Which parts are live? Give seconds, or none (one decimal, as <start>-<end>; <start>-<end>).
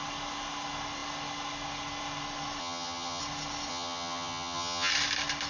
0.0-2.6; 3.2-3.7; 4.9-5.5